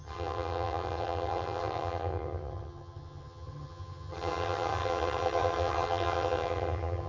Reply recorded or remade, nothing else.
remade